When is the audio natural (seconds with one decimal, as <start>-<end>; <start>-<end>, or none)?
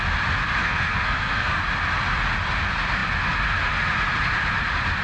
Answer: 0.0-0.6; 1.6-5.0